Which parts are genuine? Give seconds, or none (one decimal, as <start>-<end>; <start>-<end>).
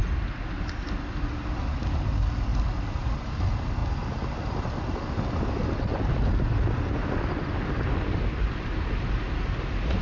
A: 0.0-10.0